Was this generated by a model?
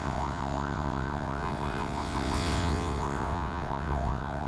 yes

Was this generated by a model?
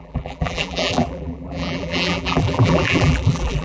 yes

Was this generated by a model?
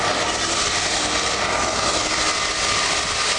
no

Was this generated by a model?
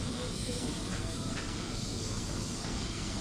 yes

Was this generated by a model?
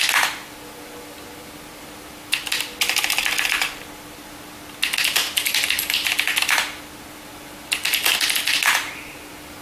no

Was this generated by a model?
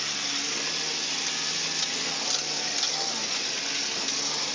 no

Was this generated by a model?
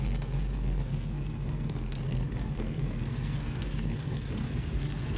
yes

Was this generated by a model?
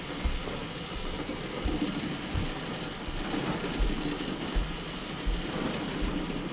no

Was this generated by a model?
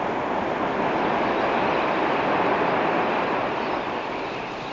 no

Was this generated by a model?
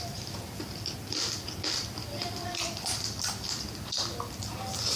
no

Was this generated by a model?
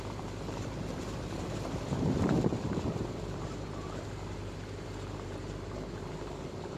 yes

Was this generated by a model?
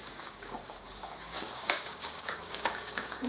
yes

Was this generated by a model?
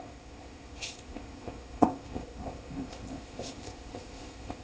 yes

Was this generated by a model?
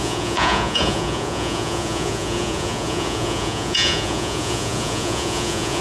yes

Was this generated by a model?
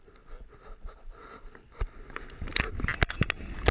no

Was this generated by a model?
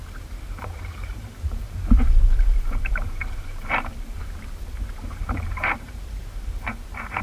yes